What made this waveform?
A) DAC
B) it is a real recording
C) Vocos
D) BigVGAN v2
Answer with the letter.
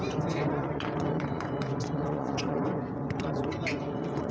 C